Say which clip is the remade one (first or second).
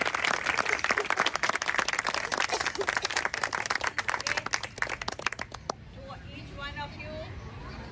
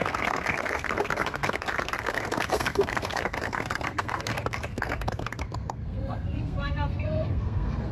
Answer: second